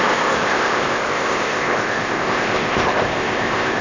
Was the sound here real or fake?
fake